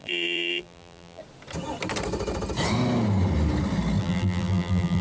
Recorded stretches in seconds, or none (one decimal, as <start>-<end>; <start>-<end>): 1.2-4.0